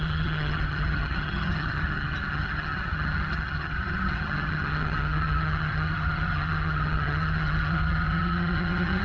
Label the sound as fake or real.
fake